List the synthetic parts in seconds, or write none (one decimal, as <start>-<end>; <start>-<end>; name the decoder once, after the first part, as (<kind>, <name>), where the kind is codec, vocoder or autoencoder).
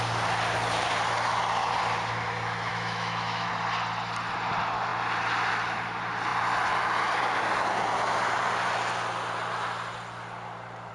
2.7-3.5 (autoencoder, DAC-VAE)